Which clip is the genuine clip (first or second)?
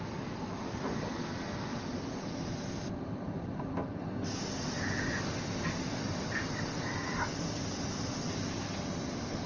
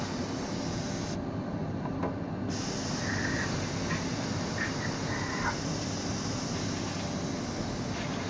second